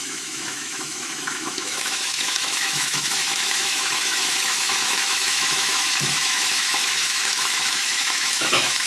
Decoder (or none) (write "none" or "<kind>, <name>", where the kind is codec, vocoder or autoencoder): autoencoder, DAC-VAE